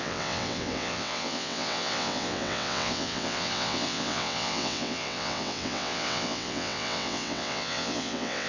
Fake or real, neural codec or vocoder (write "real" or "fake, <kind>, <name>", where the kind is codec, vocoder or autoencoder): fake, vocoder, WaveNeXt